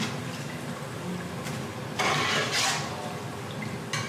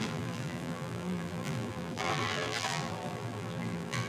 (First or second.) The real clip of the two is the first